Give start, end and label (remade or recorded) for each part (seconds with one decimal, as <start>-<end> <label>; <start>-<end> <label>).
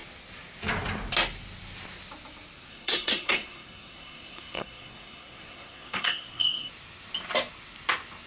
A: 0.0-2.7 recorded; 2.7-6.7 remade; 6.7-8.3 recorded